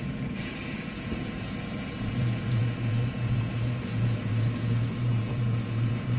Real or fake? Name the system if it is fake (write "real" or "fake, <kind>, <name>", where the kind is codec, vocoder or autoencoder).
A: fake, vocoder, Vocos